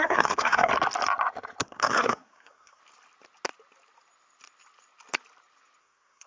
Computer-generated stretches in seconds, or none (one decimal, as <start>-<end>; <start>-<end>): 0.0-0.7; 1.6-2.8; 5.8-6.3